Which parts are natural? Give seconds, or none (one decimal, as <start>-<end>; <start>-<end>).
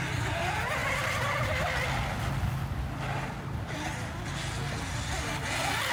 0.0-5.9